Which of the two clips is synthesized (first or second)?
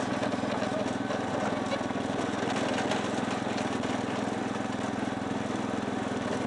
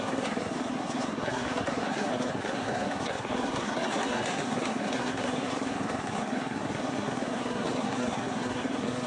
second